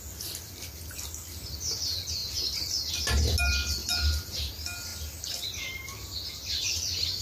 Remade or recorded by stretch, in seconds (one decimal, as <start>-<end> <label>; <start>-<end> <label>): 0.0-2.2 recorded; 2.2-2.9 remade; 2.9-3.8 recorded; 3.8-4.5 remade; 4.5-7.2 recorded